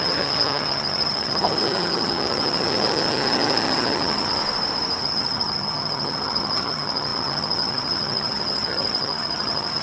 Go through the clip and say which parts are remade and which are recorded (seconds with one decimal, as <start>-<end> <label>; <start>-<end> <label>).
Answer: 0.0-4.4 remade; 4.4-5.0 recorded; 5.0-9.8 remade